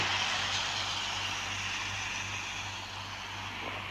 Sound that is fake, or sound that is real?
real